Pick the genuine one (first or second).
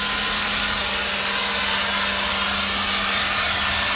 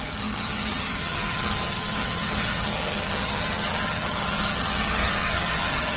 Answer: first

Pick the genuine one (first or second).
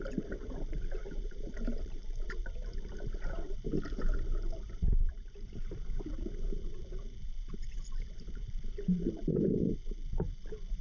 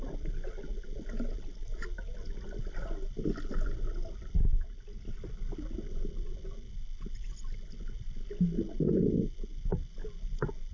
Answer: second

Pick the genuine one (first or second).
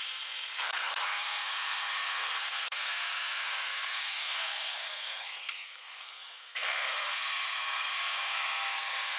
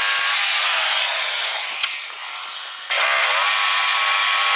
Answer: second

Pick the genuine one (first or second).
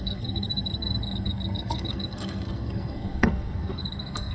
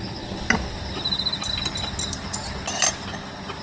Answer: second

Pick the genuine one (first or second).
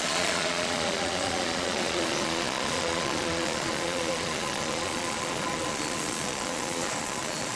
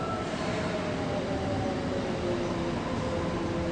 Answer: second